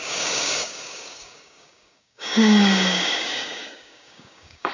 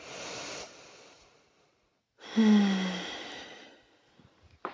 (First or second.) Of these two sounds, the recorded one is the second